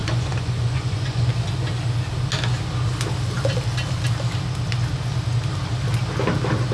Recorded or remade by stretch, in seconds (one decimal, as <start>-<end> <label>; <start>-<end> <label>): 0.0-1.3 remade; 1.3-6.7 recorded